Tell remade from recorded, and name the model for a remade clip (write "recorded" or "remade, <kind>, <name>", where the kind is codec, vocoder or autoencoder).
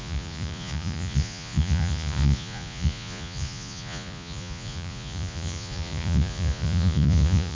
remade, vocoder, Vocos